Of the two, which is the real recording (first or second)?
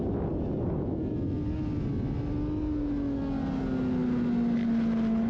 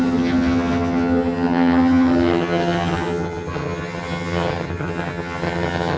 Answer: first